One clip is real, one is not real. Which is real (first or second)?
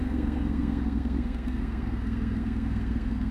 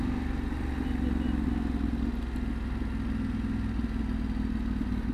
second